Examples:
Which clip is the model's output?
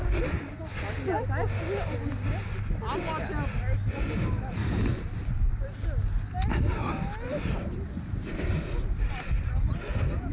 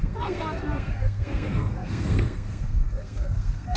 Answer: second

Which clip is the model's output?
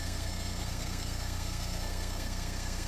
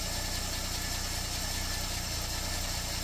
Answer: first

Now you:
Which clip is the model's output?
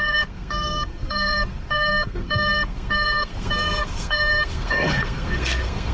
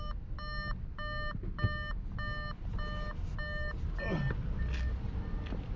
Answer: first